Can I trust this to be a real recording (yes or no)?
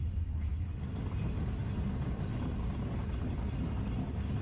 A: yes